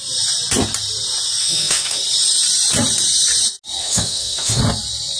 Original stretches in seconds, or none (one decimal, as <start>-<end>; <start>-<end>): 0.0-1.4; 2.0-3.8; 4.6-5.2